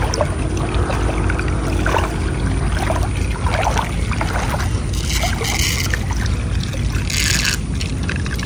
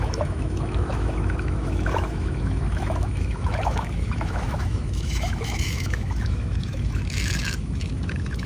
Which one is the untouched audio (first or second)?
first